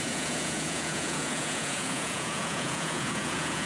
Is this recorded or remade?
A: remade